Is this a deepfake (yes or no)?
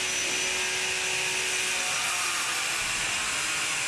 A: no